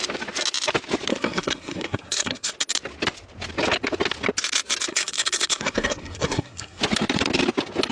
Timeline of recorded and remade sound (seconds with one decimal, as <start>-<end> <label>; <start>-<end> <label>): 0.0-1.1 recorded; 1.1-2.5 remade; 2.5-4.9 recorded; 4.9-6.8 remade; 6.8-7.9 recorded